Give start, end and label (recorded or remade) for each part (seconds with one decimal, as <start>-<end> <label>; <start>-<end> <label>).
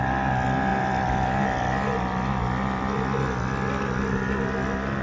0.0-5.0 recorded